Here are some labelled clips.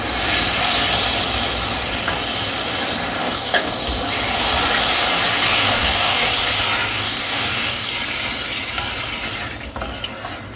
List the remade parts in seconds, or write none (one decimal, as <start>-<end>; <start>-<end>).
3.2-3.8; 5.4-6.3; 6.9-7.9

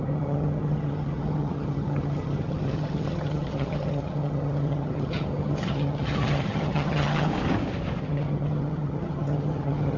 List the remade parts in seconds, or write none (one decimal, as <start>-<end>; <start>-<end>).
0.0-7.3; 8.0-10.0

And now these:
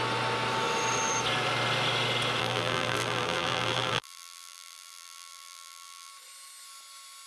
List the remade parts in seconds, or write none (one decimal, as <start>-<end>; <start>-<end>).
2.4-6.1

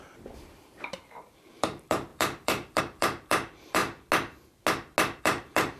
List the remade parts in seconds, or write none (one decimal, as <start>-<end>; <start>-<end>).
0.0-3.8; 5.2-5.8